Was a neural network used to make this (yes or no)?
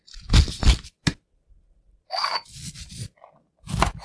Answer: no